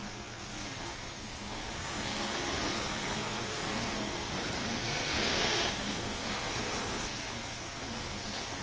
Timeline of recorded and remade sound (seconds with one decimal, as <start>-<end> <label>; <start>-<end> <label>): 0.0-4.3 remade; 4.3-4.7 recorded; 4.7-8.6 remade